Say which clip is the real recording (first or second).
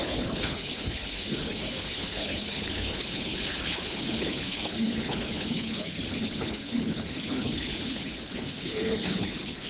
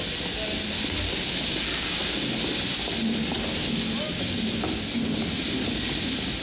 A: second